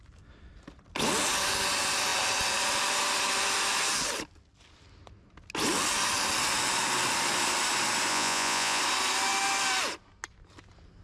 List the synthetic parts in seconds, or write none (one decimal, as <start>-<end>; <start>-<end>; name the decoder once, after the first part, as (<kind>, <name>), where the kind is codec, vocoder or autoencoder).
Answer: 8.1-8.8 (vocoder, Vocos)